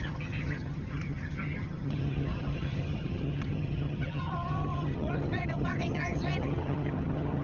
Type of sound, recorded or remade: remade